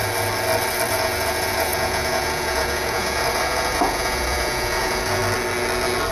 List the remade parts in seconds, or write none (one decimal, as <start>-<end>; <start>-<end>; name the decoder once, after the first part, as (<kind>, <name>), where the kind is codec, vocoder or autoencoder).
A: 0.9-5.2 (vocoder, Vocos)